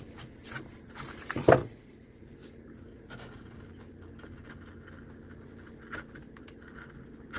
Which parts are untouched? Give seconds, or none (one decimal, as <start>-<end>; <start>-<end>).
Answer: 0.0-1.6; 2.2-2.9; 3.5-7.4